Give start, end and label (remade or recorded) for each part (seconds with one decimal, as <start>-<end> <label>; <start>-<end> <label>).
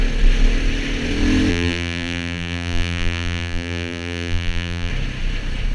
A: 0.0-1.5 recorded; 1.5-4.9 remade; 4.9-5.7 recorded